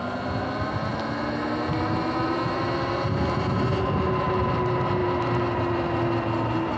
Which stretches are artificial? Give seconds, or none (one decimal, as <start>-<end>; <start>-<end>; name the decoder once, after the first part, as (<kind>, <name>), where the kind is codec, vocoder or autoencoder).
none